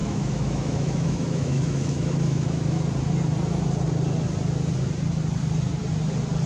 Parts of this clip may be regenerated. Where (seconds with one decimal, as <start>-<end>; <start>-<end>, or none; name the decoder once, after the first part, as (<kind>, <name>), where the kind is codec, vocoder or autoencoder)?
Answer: 0.0-2.8 (autoencoder, DAC-VAE)